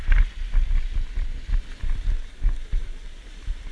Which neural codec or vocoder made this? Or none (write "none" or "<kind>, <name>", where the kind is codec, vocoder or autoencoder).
none